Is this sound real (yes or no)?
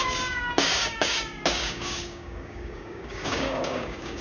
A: no